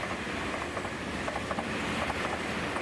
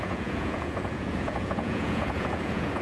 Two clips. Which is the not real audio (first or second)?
second